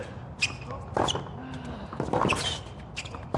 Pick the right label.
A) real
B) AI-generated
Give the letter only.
A